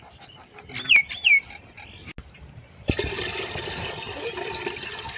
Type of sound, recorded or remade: recorded